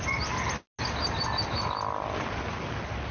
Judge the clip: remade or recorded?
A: recorded